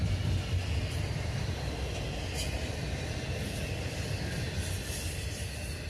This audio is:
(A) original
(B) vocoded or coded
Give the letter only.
A